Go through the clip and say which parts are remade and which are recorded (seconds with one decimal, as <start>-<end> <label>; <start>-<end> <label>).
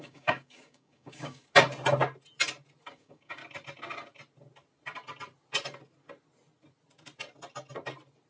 0.0-1.4 remade; 1.4-2.9 recorded; 2.9-3.4 remade; 3.4-8.3 recorded